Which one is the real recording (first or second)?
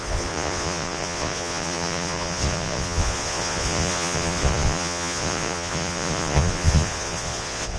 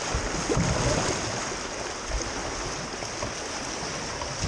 second